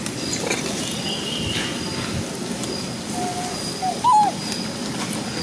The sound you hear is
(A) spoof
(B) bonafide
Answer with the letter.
B